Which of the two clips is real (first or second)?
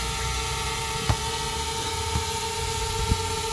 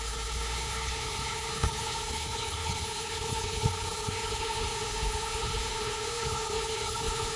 first